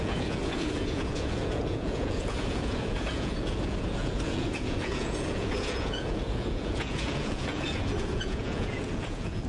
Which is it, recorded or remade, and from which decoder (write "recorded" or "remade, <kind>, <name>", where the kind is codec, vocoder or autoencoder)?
remade, vocoder, Vocos